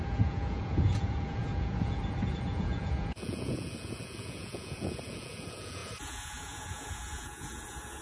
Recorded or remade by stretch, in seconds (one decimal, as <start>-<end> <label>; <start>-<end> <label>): 0.0-8.0 remade